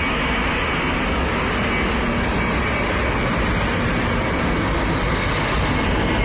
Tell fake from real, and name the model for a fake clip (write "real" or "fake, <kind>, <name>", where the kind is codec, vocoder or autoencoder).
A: real